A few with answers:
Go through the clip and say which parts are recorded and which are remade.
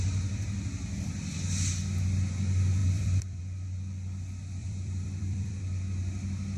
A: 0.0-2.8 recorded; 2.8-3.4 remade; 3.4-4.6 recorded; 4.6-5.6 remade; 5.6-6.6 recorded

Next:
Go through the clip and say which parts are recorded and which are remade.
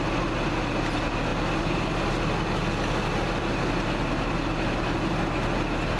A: 0.0-6.0 recorded